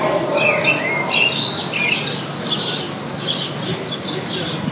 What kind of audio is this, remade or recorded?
recorded